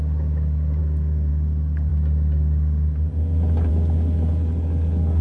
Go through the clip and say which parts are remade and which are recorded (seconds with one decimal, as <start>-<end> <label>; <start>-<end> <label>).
0.0-5.2 recorded